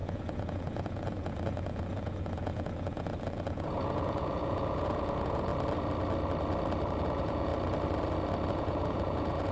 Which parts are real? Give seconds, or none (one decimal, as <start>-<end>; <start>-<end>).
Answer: 5.5-7.0; 7.5-8.5